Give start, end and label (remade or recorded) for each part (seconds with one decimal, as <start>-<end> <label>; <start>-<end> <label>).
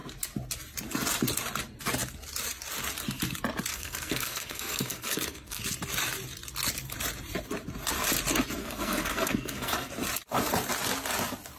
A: 0.0-3.7 recorded; 3.7-5.6 remade; 5.6-8.6 recorded; 8.6-9.9 remade; 9.9-11.6 recorded